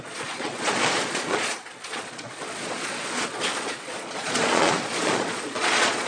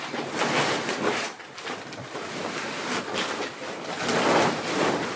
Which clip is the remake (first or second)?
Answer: first